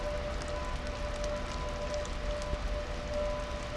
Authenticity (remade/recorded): recorded